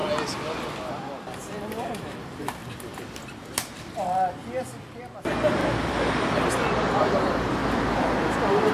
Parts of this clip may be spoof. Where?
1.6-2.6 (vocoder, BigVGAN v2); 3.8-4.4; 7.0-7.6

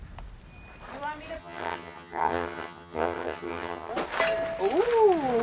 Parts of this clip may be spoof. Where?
1.4-3.9 (vocoder, HiFi-GAN)

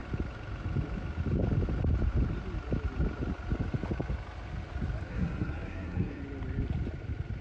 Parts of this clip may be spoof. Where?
5.1-6.2 (codec, SNAC)